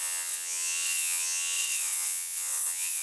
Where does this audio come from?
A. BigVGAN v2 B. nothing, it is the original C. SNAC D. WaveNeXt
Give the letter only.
D